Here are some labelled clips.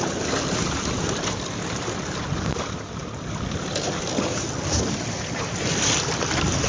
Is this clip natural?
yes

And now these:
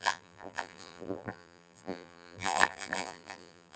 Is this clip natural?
no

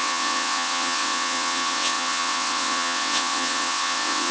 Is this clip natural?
no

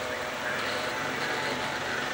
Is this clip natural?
no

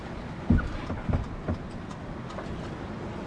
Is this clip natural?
yes